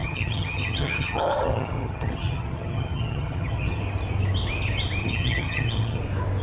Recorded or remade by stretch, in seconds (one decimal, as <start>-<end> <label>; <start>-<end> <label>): 0.0-3.8 remade; 3.8-5.0 recorded; 5.0-6.0 remade; 6.0-6.4 recorded